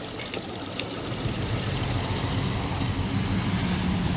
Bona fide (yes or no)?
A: yes